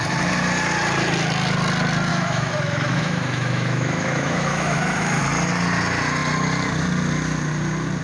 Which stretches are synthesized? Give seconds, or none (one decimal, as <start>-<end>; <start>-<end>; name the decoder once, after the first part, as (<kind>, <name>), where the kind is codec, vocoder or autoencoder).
2.1-5.2 (autoencoder, DAC-VAE)